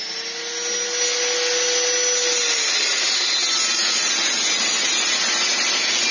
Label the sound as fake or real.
real